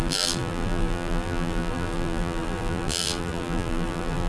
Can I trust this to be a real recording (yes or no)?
no